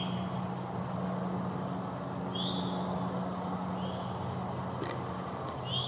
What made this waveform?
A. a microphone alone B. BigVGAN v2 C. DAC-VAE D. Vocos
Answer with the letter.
A